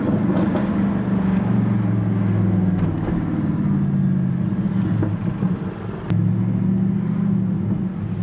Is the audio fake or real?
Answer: real